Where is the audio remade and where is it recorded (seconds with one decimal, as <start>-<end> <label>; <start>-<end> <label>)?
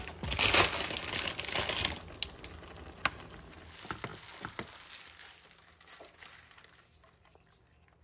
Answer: 0.0-8.0 recorded